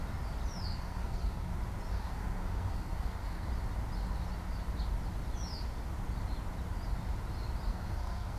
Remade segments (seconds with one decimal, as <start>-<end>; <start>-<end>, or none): 0.7-1.5; 1.9-3.5; 7.7-8.4